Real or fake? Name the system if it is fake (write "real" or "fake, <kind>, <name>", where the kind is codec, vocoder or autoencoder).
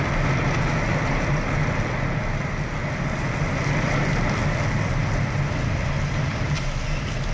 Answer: real